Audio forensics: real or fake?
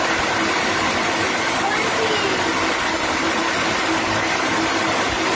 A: real